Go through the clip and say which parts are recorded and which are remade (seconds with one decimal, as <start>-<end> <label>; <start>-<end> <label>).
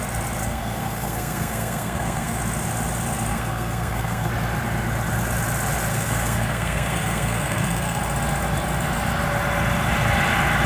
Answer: 0.0-0.4 recorded; 0.4-2.4 remade; 2.4-3.3 recorded; 3.3-4.3 remade; 4.3-5.9 recorded; 5.9-8.0 remade; 8.0-10.7 recorded